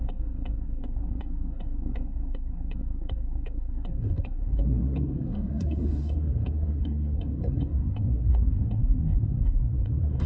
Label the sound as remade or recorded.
remade